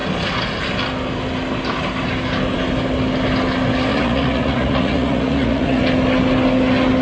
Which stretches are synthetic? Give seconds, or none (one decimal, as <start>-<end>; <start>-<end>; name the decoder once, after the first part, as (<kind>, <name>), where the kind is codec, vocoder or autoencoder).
3.9-5.8 (vocoder, Vocos)